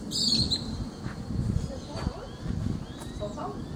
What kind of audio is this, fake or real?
real